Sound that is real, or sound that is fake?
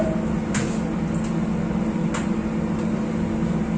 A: real